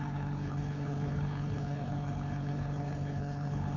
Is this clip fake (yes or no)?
yes